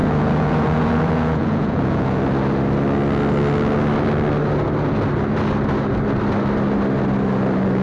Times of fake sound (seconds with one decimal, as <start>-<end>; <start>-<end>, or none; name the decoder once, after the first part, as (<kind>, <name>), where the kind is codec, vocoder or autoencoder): 0.0-2.2 (vocoder, Vocos)

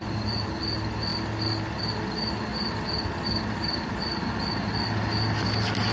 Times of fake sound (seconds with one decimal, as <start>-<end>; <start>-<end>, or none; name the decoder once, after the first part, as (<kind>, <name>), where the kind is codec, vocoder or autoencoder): none